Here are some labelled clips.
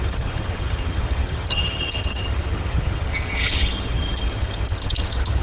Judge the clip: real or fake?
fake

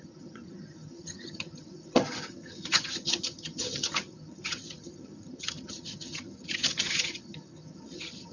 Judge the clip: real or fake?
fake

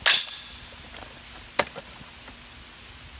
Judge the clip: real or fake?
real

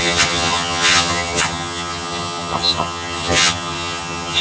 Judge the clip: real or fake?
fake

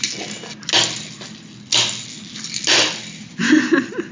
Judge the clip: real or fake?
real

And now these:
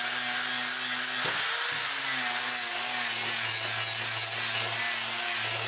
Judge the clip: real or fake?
real